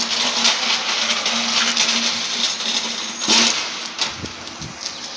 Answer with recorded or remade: recorded